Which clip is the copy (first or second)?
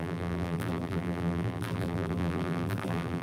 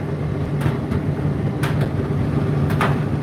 first